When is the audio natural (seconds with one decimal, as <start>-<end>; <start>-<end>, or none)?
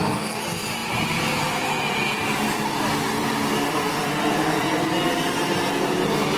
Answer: 0.0-6.4